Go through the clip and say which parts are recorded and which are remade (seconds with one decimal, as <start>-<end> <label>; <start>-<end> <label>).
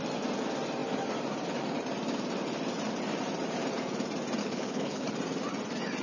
0.0-4.4 recorded; 4.4-5.1 remade; 5.1-6.0 recorded